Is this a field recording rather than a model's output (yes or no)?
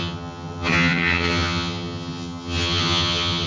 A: no